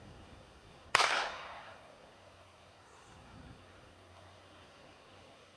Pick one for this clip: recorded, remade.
remade